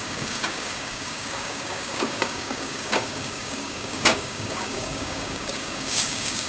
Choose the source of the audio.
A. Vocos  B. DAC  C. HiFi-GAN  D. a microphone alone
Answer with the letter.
B